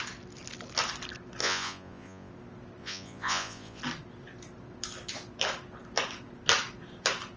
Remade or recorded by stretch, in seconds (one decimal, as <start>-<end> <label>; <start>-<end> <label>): 0.0-1.4 recorded; 1.4-2.3 remade; 2.3-2.8 recorded; 2.8-3.8 remade; 3.8-7.4 recorded